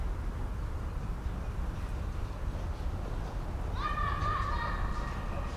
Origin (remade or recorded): recorded